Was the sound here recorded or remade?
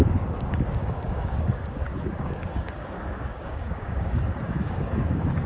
remade